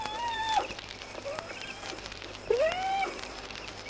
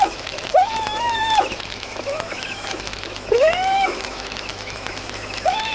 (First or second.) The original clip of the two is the first